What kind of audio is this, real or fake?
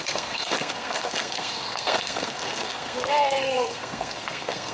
fake